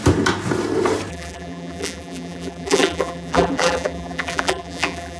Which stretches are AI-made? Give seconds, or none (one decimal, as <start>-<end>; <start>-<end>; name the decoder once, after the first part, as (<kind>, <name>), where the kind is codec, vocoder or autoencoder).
1.1-5.2 (vocoder, BigVGAN v2)